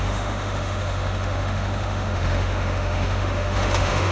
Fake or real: fake